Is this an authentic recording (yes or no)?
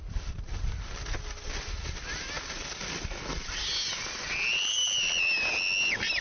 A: yes